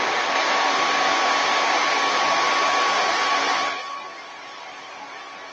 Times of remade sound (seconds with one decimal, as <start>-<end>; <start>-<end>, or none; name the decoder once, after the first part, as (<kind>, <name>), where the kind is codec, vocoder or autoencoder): none

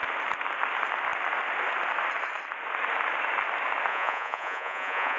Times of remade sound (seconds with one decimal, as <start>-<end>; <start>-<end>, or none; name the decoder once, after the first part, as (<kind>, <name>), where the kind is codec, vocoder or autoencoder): 3.9-5.2 (vocoder, Vocos)

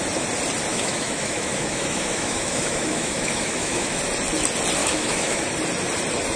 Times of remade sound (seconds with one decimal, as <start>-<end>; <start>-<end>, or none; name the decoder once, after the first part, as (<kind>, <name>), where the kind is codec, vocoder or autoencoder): 0.7-4.0 (autoencoder, DAC-VAE); 4.8-5.4

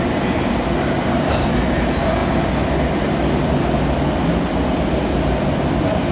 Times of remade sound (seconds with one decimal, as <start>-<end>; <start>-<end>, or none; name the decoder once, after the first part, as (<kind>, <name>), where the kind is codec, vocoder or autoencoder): none